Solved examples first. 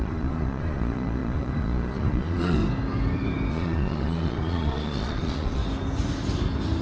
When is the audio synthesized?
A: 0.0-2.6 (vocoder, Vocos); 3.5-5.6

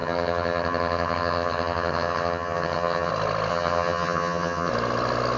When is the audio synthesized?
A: 0.0-3.1 (vocoder, HiFi-GAN); 3.5-4.7

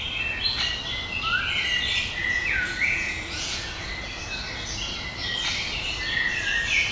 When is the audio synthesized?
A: 2.2-3.8 (vocoder, Vocos)